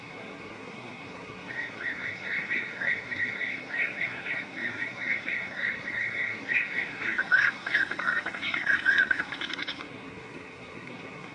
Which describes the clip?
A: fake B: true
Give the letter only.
A